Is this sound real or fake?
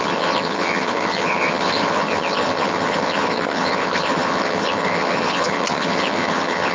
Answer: fake